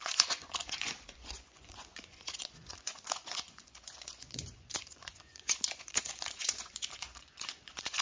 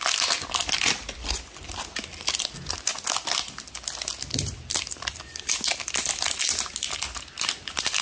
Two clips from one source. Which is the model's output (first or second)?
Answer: first